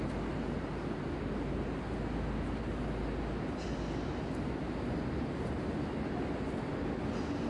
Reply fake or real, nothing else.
real